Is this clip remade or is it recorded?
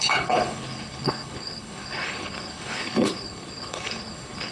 remade